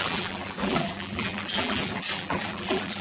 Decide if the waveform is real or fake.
fake